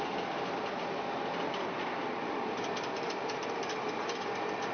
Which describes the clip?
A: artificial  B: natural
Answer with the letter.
B